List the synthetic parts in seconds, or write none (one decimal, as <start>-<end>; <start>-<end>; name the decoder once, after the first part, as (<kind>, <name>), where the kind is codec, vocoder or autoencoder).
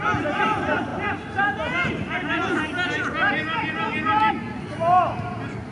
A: none